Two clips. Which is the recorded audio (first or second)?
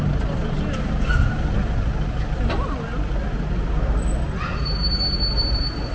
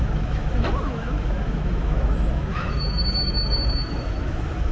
first